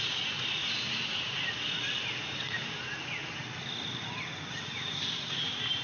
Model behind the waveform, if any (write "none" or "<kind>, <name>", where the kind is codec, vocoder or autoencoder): vocoder, BigVGAN v2